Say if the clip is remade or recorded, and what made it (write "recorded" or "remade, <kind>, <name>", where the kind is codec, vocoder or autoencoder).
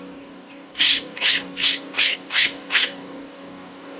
remade, codec, DAC